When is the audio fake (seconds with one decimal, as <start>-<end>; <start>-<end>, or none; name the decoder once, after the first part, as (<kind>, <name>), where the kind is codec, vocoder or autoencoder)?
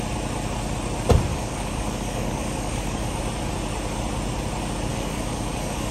1.3-3.2 (codec, DAC); 4.9-5.9